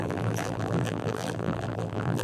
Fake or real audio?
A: fake